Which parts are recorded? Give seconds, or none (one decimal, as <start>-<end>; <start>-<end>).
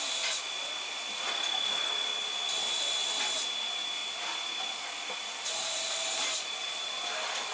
0.0-7.5